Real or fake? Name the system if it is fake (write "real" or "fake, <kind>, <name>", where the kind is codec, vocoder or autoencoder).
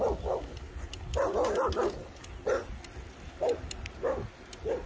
real